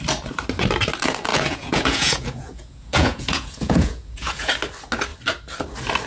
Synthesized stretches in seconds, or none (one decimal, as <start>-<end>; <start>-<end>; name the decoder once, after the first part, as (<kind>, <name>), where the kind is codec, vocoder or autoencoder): 1.3-4.5 (vocoder, Vocos)